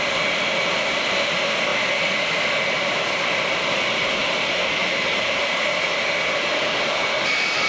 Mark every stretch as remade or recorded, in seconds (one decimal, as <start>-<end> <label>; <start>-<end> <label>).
0.0-4.8 recorded; 4.8-7.7 remade